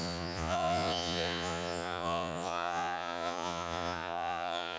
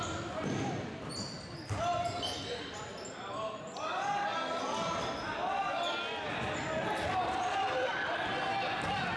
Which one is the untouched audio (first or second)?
second